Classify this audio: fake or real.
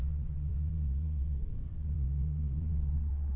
fake